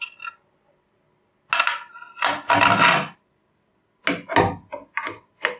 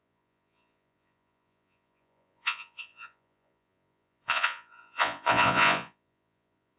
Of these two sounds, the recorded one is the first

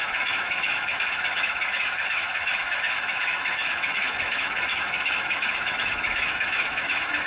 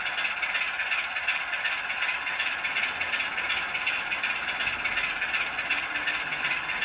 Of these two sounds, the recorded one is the second